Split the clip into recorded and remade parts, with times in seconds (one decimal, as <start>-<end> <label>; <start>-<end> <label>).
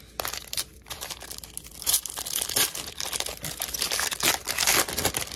0.0-5.4 recorded